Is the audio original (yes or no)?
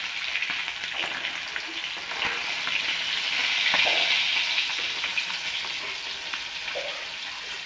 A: yes